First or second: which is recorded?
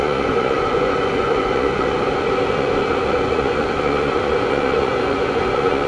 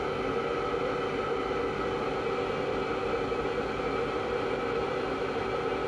second